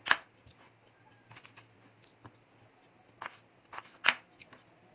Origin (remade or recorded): recorded